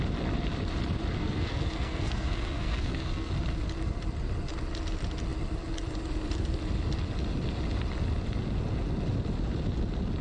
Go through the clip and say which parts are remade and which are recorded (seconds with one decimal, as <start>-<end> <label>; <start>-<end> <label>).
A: 0.0-1.2 recorded; 1.2-3.3 remade; 3.3-10.2 recorded